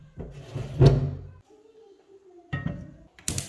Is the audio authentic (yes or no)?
yes